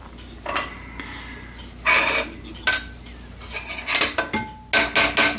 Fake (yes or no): no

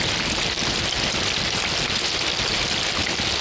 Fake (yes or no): no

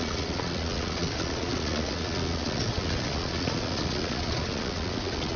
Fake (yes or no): yes